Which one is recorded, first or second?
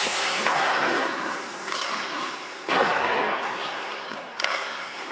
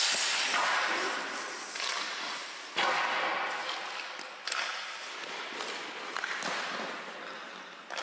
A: second